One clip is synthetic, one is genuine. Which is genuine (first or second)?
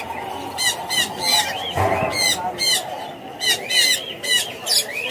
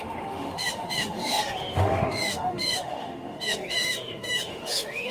first